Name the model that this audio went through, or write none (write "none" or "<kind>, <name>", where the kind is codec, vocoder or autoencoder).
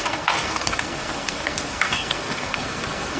codec, SNAC